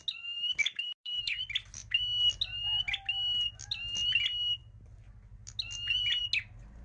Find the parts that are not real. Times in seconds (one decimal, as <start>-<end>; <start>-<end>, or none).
0.6-1.4